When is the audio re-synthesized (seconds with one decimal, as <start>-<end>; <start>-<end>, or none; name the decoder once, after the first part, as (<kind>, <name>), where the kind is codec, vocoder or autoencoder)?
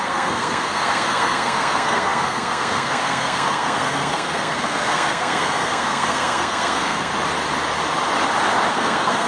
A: 0.0-7.1 (codec, SNAC); 8.7-9.3